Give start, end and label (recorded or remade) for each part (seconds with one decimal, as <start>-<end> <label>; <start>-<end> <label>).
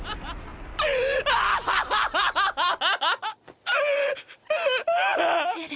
0.0-5.8 recorded